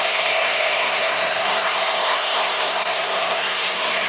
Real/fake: fake